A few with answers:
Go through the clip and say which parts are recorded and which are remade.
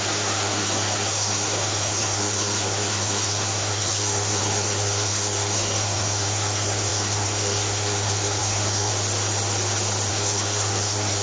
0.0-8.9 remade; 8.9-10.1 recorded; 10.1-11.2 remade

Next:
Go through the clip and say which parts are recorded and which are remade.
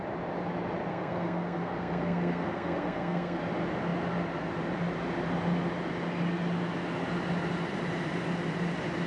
0.0-0.9 recorded; 0.9-3.4 remade; 3.4-9.1 recorded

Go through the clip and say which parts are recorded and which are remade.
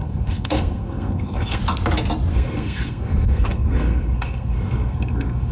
0.0-1.6 remade; 1.6-2.3 recorded; 2.3-5.5 remade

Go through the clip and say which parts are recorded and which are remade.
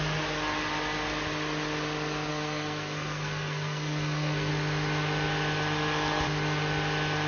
0.0-2.3 recorded; 2.3-4.5 remade; 4.5-7.3 recorded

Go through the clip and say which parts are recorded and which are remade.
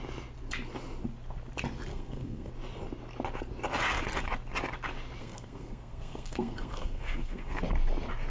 0.0-1.9 recorded; 1.9-2.5 remade; 2.5-5.2 recorded; 5.2-7.6 remade; 7.6-8.3 recorded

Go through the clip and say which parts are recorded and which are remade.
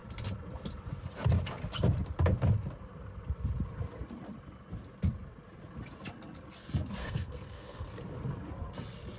0.0-7.0 recorded; 7.0-7.9 remade; 7.9-9.2 recorded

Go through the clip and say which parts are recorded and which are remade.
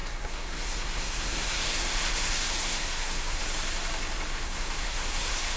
0.0-3.4 remade; 3.4-4.3 recorded; 4.3-5.6 remade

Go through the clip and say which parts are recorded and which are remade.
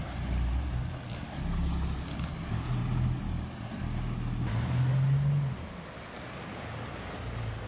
0.0-7.7 recorded